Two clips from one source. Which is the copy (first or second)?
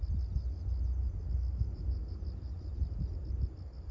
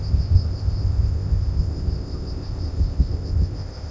second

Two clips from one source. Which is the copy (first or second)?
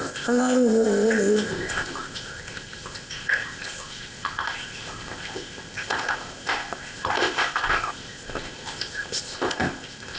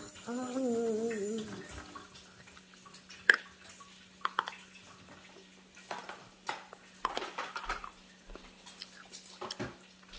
first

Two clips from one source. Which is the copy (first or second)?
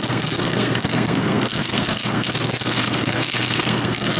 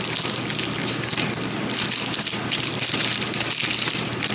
first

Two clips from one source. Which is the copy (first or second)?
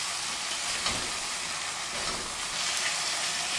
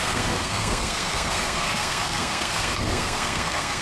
second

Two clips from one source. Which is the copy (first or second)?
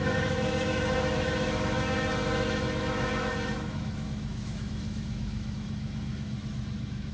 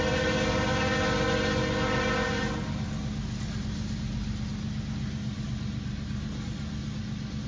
first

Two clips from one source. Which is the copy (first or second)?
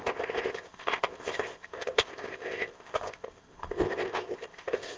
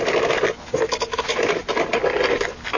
first